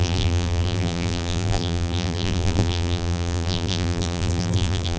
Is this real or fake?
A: fake